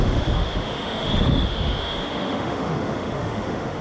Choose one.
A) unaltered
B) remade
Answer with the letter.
B